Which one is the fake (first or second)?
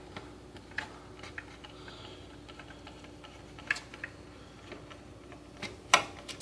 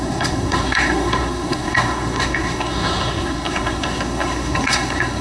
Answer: second